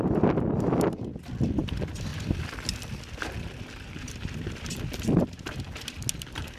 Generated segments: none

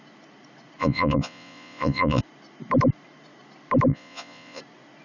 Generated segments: 0.8-2.2 (vocoder, Vocos); 3.9-4.6

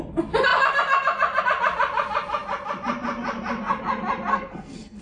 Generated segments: 4.3-5.0 (codec, SNAC)

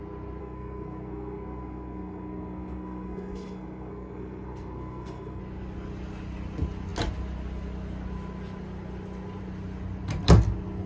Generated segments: 0.4-5.4 (codec, SNAC)

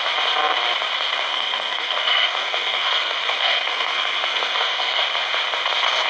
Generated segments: 1.3-5.0 (codec, SNAC)